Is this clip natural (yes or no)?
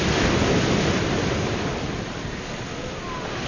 yes